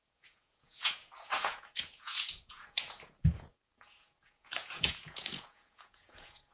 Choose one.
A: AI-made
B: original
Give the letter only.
A